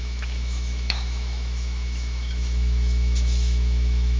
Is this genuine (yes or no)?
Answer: no